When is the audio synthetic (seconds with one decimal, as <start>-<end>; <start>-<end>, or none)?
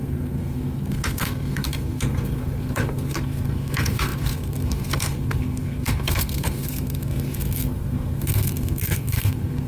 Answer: 0.0-9.7